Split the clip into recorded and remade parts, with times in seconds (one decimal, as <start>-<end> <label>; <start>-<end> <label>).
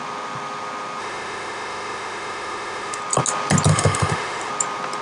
0.0-1.0 recorded; 1.0-3.0 remade; 3.0-3.7 recorded; 3.7-4.5 remade; 4.5-5.0 recorded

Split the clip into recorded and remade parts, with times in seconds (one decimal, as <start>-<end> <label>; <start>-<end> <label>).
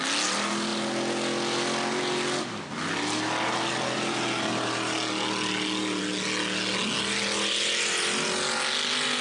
0.0-9.2 recorded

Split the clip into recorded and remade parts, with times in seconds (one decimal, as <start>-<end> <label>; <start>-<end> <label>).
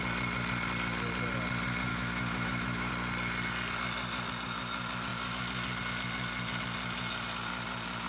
0.0-1.9 recorded; 1.9-2.9 remade; 2.9-8.1 recorded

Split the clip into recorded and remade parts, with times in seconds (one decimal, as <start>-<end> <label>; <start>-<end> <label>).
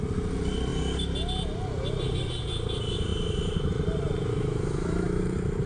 0.0-4.3 recorded; 4.3-5.2 remade; 5.2-5.7 recorded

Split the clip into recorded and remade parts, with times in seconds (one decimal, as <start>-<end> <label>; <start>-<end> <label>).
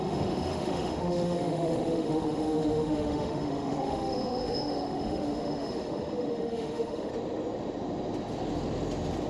0.0-7.1 remade; 7.1-9.3 recorded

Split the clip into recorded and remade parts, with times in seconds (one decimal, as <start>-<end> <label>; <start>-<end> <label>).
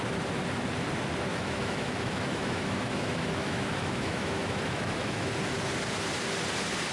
0.0-1.3 recorded; 1.3-5.3 remade; 5.3-6.9 recorded